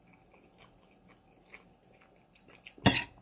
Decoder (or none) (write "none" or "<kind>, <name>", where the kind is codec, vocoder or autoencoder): none